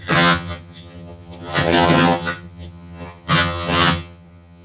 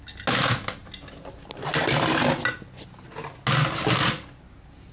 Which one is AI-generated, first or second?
first